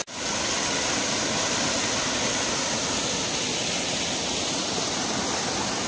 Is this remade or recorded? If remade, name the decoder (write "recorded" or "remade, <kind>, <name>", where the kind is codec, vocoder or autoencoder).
recorded